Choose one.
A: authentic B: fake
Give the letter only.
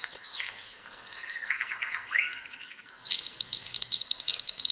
B